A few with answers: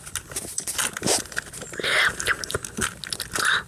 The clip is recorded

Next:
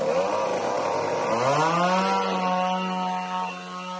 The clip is recorded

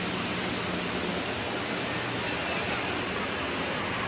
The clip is recorded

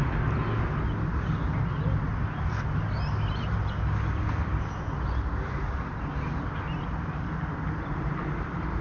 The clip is recorded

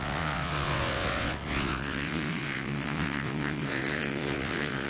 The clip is remade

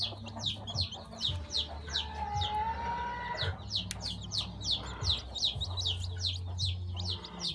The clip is recorded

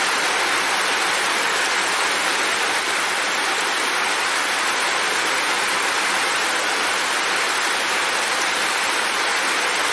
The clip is recorded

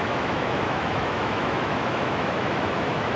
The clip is remade